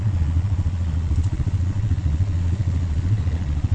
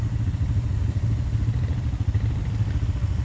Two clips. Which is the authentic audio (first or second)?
second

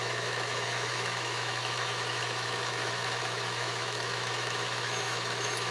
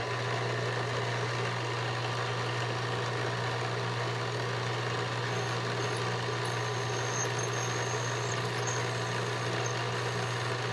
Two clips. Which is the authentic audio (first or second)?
second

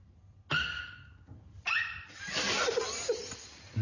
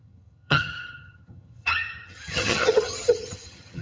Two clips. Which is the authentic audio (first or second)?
first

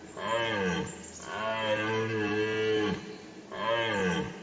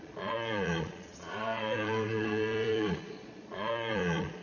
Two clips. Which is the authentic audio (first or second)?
first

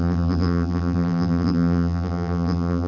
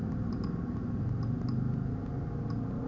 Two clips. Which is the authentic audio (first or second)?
second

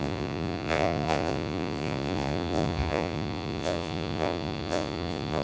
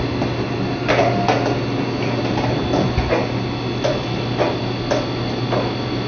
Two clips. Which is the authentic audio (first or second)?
second